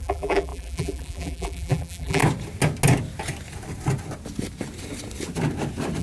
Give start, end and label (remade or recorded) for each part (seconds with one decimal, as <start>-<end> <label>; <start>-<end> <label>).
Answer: 0.0-2.2 remade; 2.2-6.0 recorded